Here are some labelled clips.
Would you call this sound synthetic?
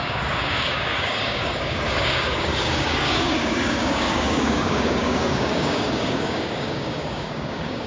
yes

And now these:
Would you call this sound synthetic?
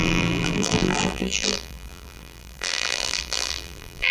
yes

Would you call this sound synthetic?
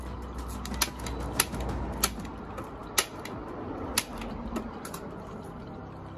no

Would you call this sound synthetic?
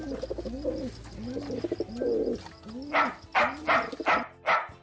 no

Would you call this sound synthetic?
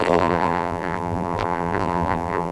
yes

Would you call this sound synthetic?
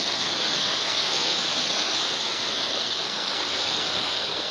yes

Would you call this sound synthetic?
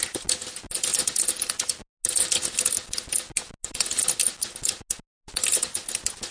no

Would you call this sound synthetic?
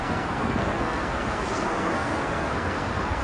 yes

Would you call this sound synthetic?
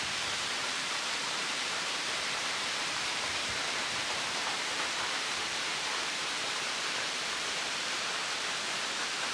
yes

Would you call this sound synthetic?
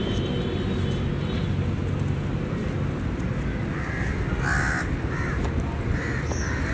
no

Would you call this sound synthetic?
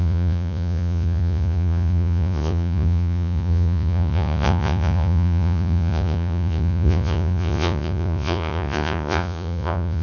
yes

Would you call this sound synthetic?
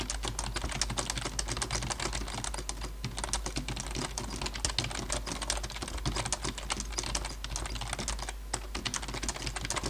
no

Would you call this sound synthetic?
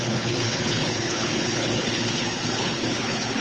yes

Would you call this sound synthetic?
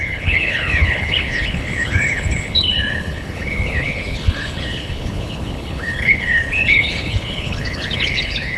yes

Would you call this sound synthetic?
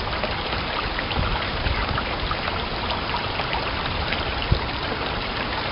no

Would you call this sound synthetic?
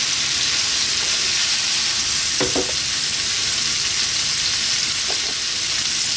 no